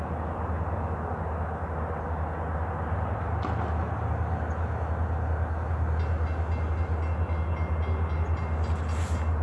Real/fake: real